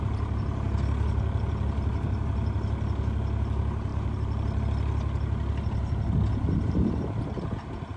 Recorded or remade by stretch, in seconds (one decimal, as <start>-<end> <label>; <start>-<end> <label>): 0.0-3.9 recorded; 3.9-4.6 remade; 4.6-8.0 recorded